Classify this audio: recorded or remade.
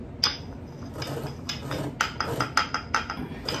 recorded